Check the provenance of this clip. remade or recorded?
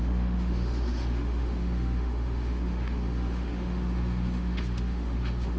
remade